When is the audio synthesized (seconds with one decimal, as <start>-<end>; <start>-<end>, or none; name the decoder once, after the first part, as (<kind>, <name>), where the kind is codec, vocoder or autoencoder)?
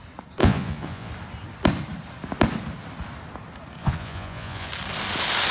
0.4-1.1 (vocoder, Vocos); 3.8-4.7